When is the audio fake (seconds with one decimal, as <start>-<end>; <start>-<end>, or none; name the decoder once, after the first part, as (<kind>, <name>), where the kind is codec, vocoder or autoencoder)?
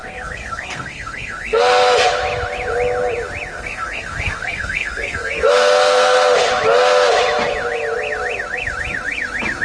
0.0-1.6 (codec, SNAC); 3.5-5.5